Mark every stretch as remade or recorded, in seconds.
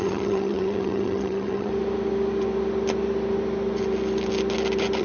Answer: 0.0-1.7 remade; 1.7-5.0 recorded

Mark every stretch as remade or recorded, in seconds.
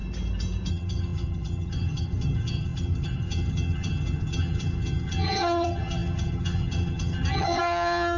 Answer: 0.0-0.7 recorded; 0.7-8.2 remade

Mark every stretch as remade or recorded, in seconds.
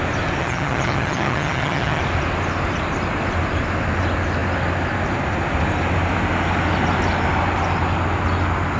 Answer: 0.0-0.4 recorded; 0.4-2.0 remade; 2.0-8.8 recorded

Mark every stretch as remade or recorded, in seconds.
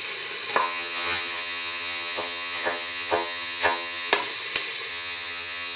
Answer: 0.0-0.6 recorded; 0.6-4.1 remade; 4.1-4.9 recorded; 4.9-5.8 remade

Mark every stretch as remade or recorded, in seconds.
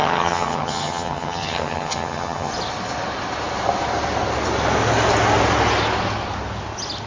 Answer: 0.0-2.5 remade; 2.5-7.1 recorded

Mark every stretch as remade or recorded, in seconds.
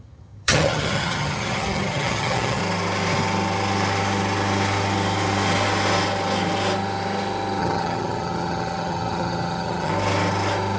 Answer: 0.0-2.6 remade; 2.6-7.6 recorded; 7.6-9.9 remade; 9.9-10.8 recorded